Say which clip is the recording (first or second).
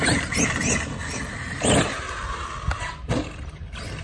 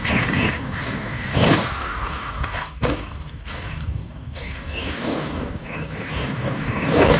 first